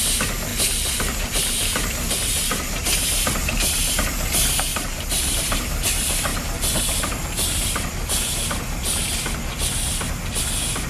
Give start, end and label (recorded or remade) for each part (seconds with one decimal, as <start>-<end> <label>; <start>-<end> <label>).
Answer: 0.0-0.5 recorded; 0.5-3.9 remade; 3.9-4.7 recorded; 4.7-5.7 remade; 5.7-10.9 recorded